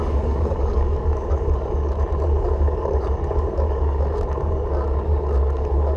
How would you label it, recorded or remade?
remade